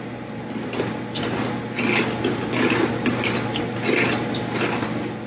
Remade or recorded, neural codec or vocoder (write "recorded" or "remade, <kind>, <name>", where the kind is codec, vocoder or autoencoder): recorded